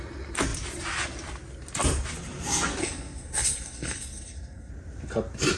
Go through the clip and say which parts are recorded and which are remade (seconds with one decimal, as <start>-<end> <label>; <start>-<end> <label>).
0.0-2.8 recorded; 2.8-4.7 remade; 4.7-5.6 recorded